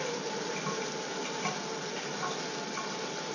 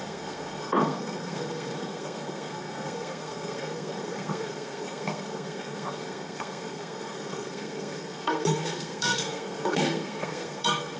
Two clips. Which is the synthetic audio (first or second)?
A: second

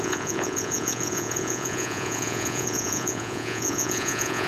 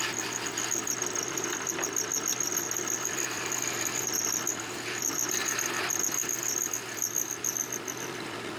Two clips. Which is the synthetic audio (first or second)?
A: first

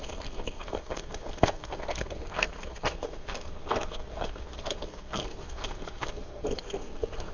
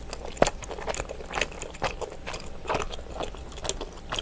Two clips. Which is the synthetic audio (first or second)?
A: first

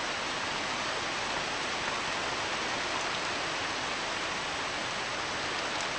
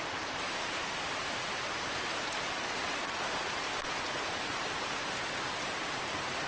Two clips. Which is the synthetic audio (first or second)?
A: second